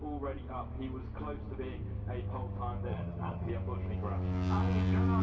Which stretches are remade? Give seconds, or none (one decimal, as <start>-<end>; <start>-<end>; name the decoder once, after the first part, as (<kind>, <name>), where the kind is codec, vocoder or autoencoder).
2.9-3.5 (vocoder, HiFi-GAN)

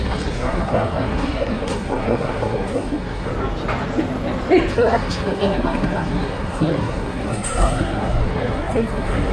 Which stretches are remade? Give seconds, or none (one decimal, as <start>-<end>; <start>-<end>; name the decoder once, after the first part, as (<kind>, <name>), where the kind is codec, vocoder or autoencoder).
0.0-3.3 (codec, SNAC); 4.7-9.3

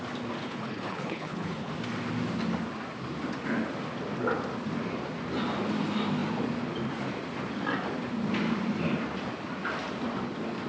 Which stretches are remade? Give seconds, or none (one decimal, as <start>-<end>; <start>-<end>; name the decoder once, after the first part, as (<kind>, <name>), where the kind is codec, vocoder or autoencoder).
0.4-1.7 (codec, HILCodec)

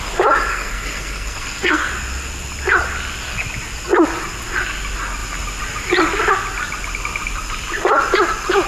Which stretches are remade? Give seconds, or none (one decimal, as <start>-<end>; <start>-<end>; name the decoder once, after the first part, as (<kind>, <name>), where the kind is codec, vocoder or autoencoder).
0.5-1.9 (codec, SNAC)

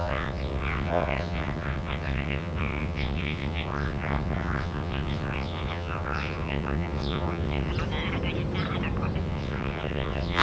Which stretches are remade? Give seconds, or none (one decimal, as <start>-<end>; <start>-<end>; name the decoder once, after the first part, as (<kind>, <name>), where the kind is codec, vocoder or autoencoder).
0.0-7.7 (vocoder, WaveNeXt); 9.2-10.4

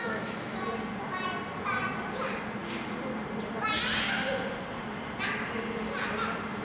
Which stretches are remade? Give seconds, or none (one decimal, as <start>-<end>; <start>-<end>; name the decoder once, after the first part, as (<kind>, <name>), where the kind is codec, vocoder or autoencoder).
0.0-0.6 (autoencoder, DAC-VAE)